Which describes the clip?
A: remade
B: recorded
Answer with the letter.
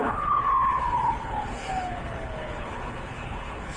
A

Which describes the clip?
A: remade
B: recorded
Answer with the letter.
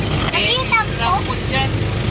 B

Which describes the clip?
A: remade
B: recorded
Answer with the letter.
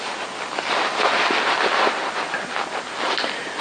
B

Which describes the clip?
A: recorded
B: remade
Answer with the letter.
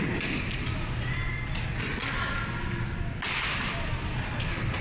A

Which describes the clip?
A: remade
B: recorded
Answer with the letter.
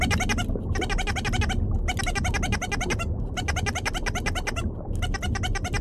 B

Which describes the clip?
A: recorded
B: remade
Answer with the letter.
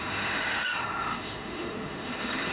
B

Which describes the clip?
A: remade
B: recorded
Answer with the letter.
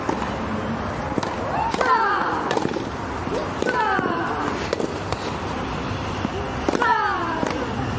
B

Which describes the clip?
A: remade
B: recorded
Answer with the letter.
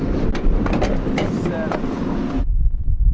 B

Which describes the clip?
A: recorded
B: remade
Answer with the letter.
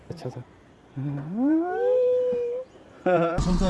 B